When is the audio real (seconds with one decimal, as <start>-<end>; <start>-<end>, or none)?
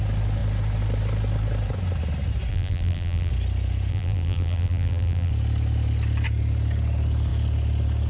0.0-2.5; 3.3-3.9; 5.3-8.1